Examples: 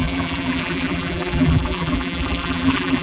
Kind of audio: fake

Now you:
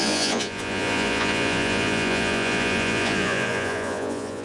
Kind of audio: fake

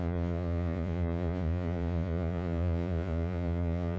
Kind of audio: fake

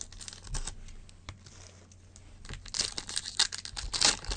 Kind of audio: real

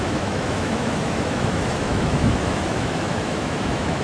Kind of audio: fake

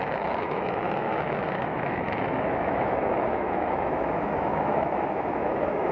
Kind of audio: fake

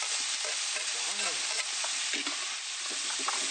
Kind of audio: real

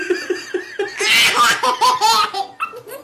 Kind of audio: real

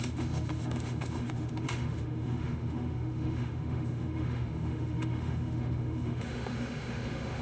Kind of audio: fake